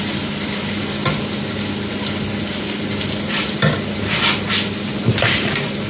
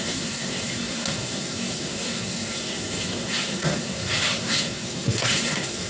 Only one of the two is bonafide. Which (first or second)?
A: first